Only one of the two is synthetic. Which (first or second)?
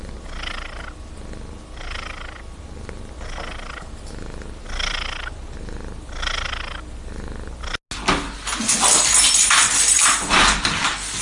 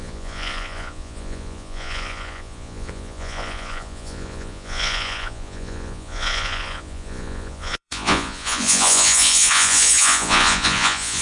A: second